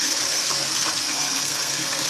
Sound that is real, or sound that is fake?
fake